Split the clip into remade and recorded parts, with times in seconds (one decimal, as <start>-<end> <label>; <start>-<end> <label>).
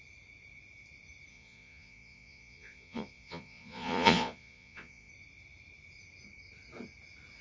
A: 0.0-1.3 recorded; 1.3-5.1 remade; 5.1-7.4 recorded